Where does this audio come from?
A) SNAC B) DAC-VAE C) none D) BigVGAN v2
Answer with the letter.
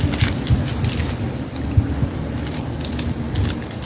C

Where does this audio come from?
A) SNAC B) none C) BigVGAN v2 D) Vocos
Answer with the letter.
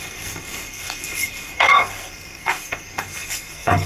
A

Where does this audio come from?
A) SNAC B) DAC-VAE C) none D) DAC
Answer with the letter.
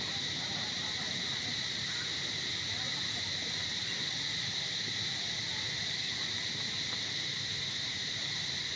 C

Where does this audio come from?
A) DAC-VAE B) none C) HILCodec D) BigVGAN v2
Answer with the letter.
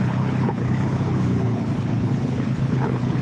C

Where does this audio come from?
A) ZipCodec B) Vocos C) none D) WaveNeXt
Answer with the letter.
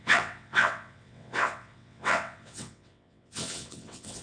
D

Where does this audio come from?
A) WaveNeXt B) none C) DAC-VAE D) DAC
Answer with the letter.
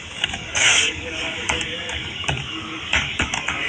D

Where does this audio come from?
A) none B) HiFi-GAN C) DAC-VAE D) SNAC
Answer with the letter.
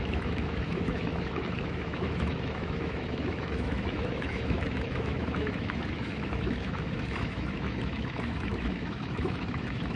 C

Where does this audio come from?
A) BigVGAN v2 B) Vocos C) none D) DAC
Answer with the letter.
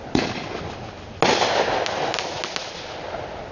C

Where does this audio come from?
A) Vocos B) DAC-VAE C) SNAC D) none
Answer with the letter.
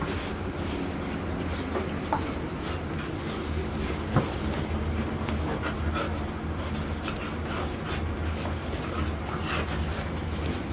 D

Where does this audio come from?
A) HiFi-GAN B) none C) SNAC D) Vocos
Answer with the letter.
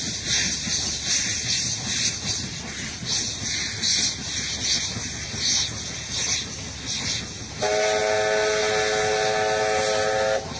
B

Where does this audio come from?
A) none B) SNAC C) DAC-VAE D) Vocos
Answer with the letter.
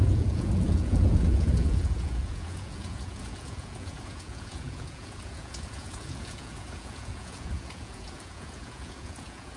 D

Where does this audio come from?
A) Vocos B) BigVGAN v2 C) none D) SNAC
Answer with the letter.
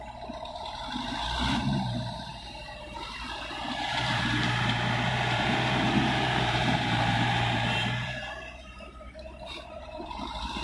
B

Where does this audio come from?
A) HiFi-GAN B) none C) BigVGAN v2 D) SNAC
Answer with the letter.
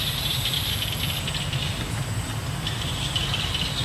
B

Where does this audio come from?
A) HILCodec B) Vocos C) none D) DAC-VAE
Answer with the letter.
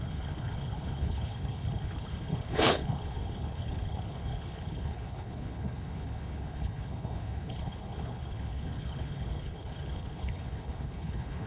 A